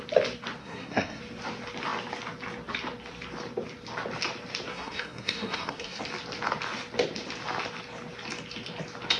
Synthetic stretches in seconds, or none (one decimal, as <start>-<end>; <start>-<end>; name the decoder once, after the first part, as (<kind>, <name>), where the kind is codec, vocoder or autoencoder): 0.6-1.2 (codec, SNAC); 4.7-6.0